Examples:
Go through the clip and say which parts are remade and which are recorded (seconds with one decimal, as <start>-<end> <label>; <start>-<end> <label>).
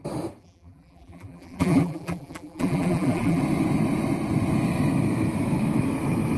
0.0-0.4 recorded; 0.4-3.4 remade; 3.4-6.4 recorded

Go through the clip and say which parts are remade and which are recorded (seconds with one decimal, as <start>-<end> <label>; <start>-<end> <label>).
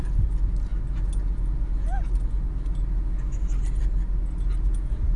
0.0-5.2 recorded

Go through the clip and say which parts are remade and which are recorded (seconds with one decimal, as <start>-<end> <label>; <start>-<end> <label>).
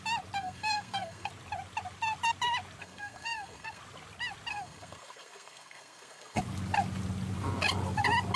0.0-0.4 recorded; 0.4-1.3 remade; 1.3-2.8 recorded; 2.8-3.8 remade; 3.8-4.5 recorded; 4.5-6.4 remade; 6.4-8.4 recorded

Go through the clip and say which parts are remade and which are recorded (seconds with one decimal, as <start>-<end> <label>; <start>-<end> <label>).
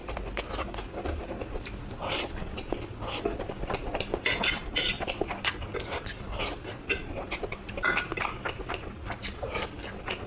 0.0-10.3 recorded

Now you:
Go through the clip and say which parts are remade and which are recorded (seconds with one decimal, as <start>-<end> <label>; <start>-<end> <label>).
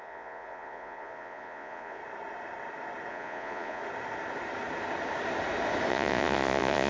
0.0-2.0 remade; 2.0-3.1 recorded; 3.1-3.8 remade; 3.8-5.9 recorded; 5.9-6.9 remade